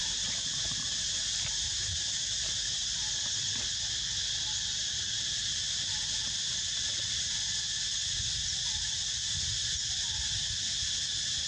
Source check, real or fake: real